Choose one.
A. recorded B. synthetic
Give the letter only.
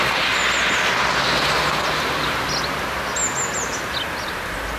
A